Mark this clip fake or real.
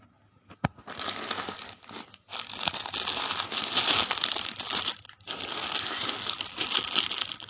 real